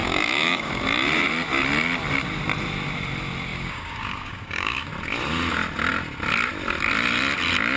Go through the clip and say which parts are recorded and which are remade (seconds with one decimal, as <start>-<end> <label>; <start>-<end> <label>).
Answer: 0.0-0.7 remade; 0.7-3.5 recorded; 3.5-4.9 remade; 4.9-7.8 recorded